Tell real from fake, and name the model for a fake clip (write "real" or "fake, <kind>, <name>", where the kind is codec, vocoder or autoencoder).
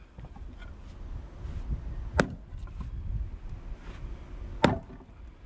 real